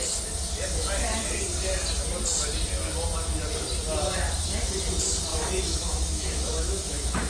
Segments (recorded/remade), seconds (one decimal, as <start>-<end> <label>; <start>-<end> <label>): 0.0-5.3 recorded; 5.3-7.3 remade